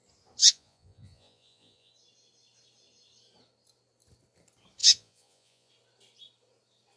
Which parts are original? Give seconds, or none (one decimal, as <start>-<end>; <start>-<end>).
0.0-0.4; 1.9-4.8; 5.7-7.0